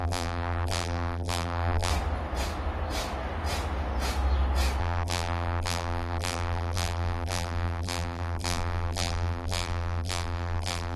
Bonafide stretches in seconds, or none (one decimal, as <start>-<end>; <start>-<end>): 1.9-4.8